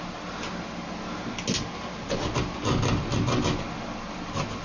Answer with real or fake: real